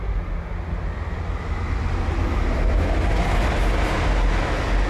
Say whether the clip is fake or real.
real